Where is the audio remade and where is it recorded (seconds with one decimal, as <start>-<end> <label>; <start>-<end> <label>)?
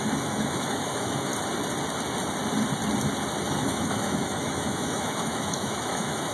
0.0-1.3 remade; 1.3-3.5 recorded; 3.5-6.3 remade